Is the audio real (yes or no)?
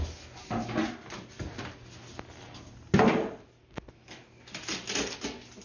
yes